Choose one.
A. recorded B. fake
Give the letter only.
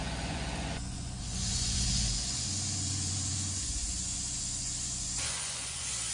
B